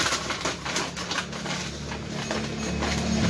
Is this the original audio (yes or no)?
yes